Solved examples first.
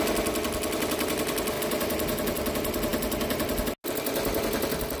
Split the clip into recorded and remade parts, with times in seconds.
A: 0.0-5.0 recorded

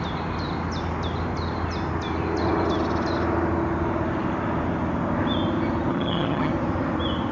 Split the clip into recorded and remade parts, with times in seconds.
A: 0.0-5.9 recorded; 5.9-6.5 remade; 6.5-7.3 recorded

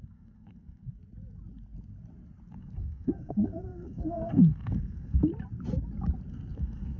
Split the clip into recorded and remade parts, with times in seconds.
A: 0.0-1.0 remade; 1.0-2.6 recorded; 2.6-5.3 remade; 5.3-6.3 recorded; 6.3-7.0 remade

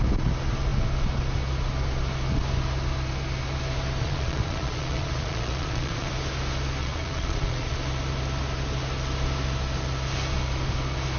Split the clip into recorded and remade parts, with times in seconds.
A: 0.0-4.0 recorded; 4.0-6.1 remade; 6.1-6.8 recorded; 6.8-7.8 remade; 7.8-11.2 recorded

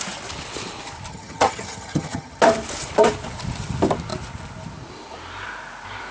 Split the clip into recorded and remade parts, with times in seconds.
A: 0.0-1.1 recorded; 1.1-2.4 remade; 2.4-6.1 recorded

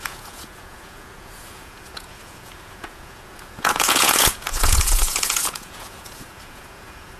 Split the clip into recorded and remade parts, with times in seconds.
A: 0.0-7.2 remade